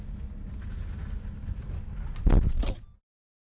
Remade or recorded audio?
recorded